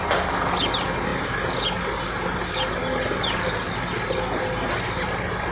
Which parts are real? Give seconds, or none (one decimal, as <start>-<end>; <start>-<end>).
0.0-5.5